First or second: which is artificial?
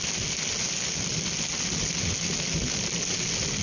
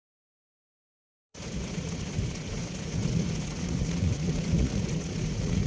second